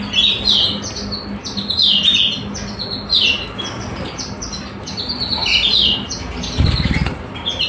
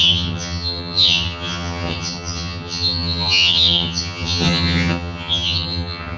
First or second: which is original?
first